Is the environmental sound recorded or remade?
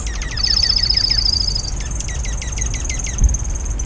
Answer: recorded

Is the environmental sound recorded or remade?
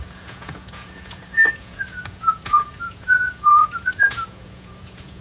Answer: remade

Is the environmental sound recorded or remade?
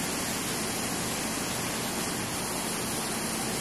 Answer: recorded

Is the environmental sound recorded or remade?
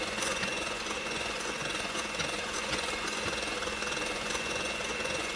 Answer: remade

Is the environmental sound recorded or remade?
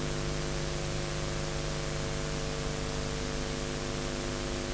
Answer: recorded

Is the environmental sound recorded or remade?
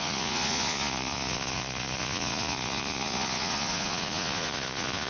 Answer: remade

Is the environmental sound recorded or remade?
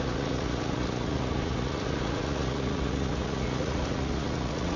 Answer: remade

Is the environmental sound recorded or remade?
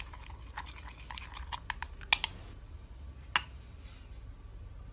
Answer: recorded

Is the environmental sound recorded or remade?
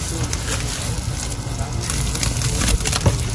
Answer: recorded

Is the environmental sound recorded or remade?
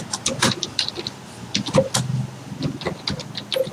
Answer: recorded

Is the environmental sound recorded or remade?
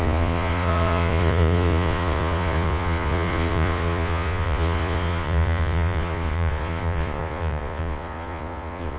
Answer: remade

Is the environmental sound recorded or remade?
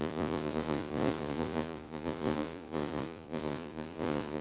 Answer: remade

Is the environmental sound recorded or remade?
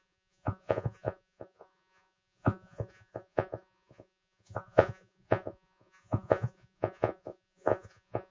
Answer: remade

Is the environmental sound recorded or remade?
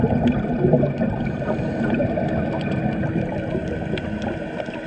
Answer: recorded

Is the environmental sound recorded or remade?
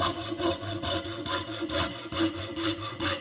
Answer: remade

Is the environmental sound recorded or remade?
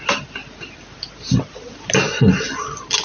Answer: recorded